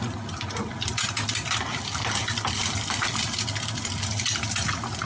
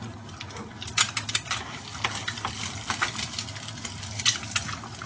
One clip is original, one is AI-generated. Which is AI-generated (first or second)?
first